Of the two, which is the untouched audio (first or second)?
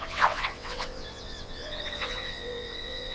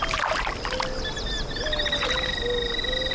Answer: second